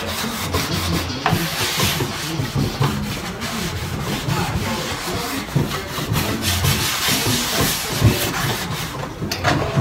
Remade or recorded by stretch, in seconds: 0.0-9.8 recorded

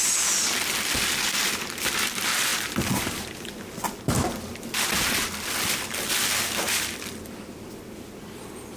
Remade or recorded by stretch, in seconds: 0.0-2.5 remade; 2.5-6.5 recorded; 6.5-8.8 remade

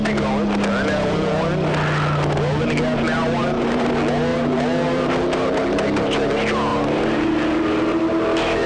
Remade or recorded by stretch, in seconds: 0.0-3.4 recorded; 3.4-3.9 remade; 3.9-4.3 recorded; 4.3-5.1 remade; 5.1-6.7 recorded; 6.7-7.4 remade; 7.4-8.7 recorded